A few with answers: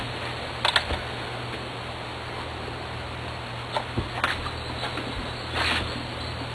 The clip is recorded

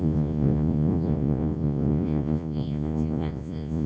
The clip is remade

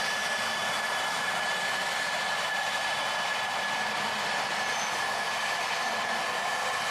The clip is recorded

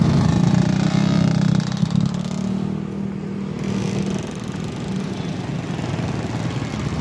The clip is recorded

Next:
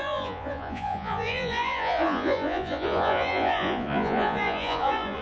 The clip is remade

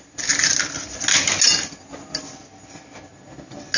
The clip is recorded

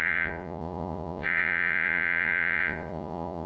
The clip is remade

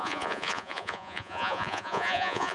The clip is remade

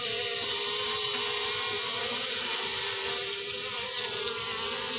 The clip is recorded